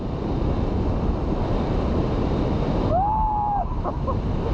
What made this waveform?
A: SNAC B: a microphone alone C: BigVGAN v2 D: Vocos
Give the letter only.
B